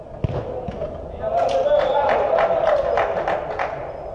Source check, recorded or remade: recorded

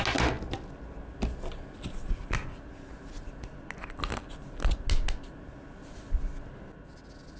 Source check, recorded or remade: recorded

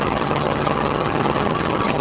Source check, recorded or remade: remade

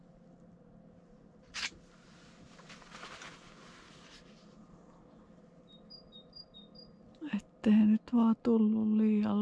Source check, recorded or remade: recorded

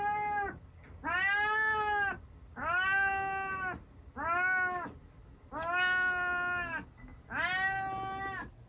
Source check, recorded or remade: recorded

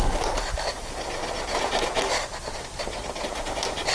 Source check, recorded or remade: recorded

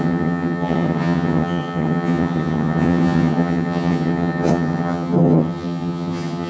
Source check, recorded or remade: remade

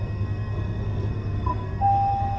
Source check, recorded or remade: remade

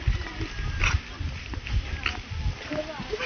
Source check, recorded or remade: recorded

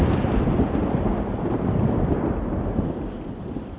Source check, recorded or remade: recorded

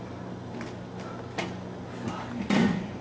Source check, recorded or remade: recorded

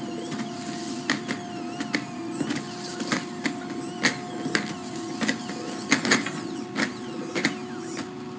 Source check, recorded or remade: recorded